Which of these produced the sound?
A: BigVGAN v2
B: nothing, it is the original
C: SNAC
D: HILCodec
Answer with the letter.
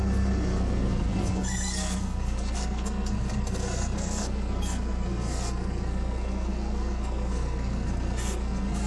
C